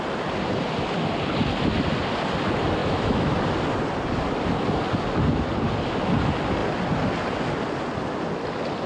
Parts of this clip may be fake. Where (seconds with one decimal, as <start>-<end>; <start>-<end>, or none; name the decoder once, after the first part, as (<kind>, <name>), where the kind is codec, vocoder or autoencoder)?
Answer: 2.8-3.3 (autoencoder, DAC-VAE)